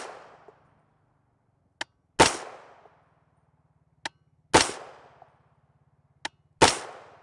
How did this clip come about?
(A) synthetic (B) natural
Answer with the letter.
B